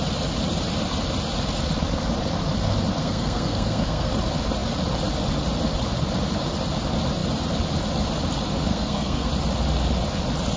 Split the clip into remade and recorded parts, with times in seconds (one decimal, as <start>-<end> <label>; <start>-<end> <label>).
0.0-3.0 recorded; 3.0-4.1 remade; 4.1-8.7 recorded; 8.7-9.3 remade; 9.3-10.6 recorded